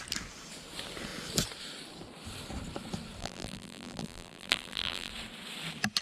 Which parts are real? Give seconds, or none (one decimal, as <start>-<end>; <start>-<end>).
0.0-3.2; 5.1-6.0